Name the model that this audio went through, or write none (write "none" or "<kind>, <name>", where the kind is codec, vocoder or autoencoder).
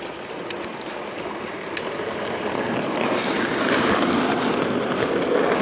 none